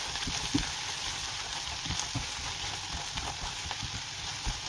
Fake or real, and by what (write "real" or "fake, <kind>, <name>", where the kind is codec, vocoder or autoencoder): real